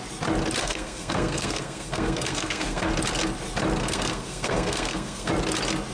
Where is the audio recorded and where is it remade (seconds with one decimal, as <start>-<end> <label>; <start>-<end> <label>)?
0.0-0.6 recorded; 0.6-2.9 remade; 2.9-3.8 recorded; 3.8-5.3 remade; 5.3-5.9 recorded